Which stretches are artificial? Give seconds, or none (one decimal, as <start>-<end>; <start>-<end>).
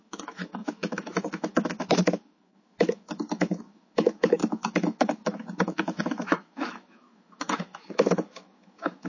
0.0-9.1